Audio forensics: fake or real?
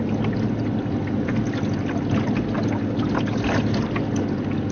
real